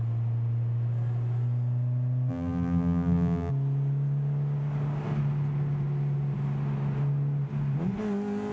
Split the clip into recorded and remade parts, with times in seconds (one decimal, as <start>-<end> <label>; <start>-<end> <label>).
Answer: 0.0-2.3 recorded; 2.3-3.5 remade; 3.5-8.5 recorded